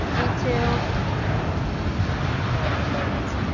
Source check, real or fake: real